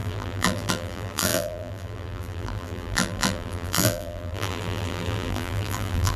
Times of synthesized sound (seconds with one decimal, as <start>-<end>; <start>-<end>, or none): 0.0-6.2